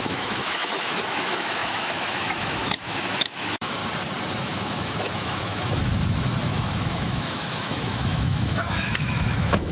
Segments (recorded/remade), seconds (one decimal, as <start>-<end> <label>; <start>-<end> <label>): 0.0-3.8 remade; 3.8-4.4 recorded; 4.4-5.9 remade; 5.9-6.4 recorded; 6.4-9.7 remade